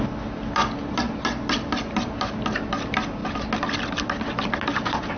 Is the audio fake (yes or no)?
no